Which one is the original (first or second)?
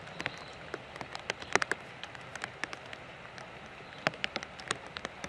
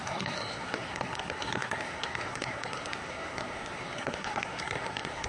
first